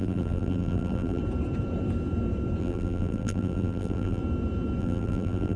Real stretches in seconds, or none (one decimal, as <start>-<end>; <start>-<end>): 1.2-2.6; 4.2-4.8